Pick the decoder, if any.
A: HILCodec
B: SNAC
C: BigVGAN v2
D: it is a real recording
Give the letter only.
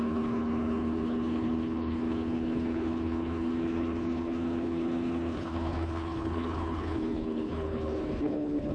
A